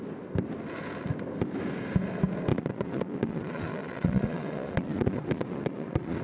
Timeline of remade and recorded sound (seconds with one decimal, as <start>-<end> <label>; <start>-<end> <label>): 0.0-2.5 recorded; 2.5-6.2 remade